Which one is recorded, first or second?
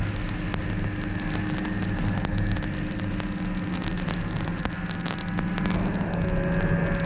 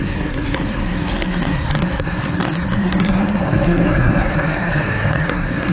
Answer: first